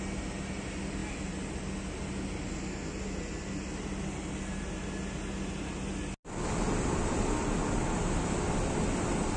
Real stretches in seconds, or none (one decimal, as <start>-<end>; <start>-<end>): 0.0-9.4

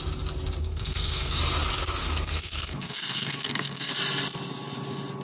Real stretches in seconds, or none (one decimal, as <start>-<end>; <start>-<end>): 0.0-0.6; 1.4-2.0; 3.9-5.2

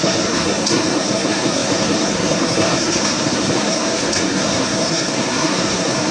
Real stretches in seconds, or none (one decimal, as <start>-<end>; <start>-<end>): none

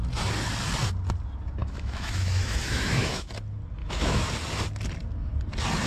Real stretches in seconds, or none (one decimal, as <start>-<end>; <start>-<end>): 0.0-1.6; 3.3-3.8; 4.3-5.9

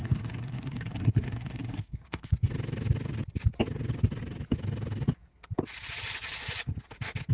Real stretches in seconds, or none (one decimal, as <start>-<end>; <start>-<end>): 2.3-7.3

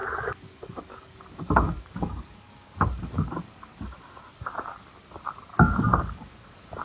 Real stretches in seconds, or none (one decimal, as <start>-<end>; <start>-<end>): 4.1-5.5